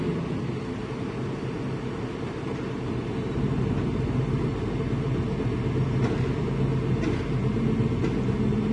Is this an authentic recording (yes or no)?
yes